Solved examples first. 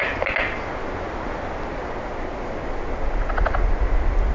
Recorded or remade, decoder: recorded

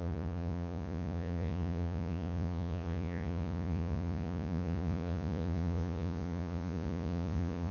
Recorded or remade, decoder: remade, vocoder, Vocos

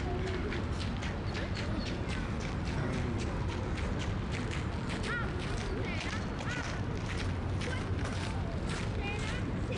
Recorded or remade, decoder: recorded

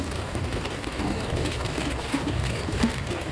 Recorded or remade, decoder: remade, codec, DAC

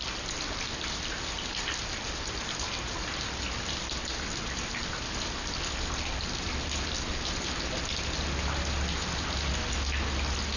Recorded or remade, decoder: recorded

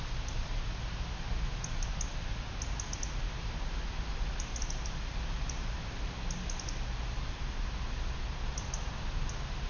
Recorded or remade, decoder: recorded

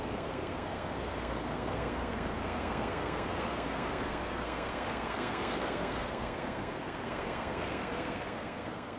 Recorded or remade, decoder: remade, codec, SNAC